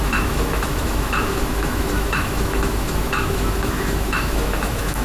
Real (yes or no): no